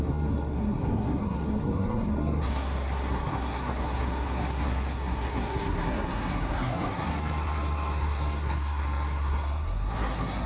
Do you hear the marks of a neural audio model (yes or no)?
yes